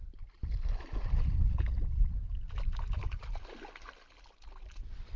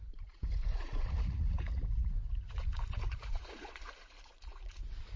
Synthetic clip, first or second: second